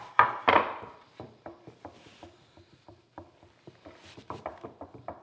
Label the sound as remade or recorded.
remade